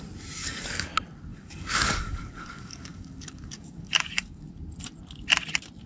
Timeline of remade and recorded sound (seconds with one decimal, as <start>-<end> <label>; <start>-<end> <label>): 0.0-0.4 recorded; 0.4-0.9 remade; 0.9-1.3 recorded; 1.3-4.5 remade; 4.5-5.9 recorded